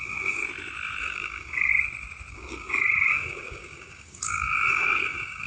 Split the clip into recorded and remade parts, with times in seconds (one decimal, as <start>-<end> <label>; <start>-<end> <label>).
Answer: 0.0-0.4 remade; 0.4-1.0 recorded; 1.0-1.7 remade; 1.7-2.3 recorded; 2.3-5.5 remade